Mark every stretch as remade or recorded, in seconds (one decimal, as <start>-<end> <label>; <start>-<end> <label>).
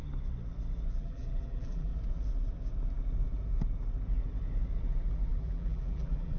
0.0-0.9 recorded; 0.9-1.9 remade; 1.9-5.3 recorded; 5.3-6.4 remade